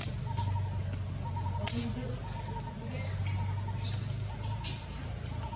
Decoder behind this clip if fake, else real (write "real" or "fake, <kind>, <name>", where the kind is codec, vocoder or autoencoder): real